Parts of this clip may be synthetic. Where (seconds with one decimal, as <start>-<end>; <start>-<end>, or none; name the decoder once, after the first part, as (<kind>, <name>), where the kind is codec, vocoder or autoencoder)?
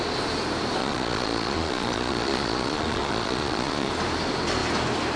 0.8-3.9 (vocoder, Vocos)